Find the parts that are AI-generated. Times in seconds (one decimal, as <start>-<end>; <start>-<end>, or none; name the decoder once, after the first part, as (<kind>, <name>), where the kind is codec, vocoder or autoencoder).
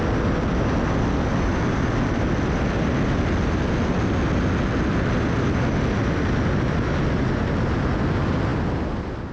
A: none